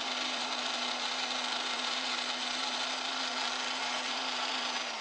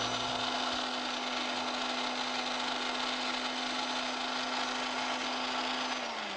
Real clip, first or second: second